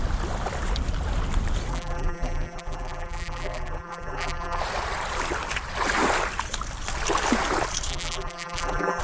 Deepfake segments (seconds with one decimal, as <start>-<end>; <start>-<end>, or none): 1.7-4.6; 7.9-9.0